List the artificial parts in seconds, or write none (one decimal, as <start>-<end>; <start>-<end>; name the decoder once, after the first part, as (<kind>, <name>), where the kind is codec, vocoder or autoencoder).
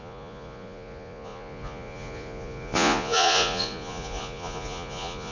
0.0-5.3 (vocoder, Vocos)